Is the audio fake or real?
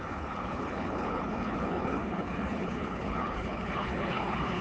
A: fake